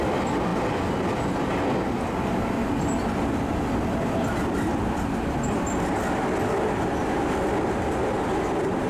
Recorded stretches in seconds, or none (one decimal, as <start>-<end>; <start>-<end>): 0.0-8.9